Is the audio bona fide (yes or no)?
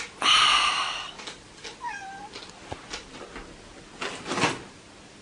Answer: yes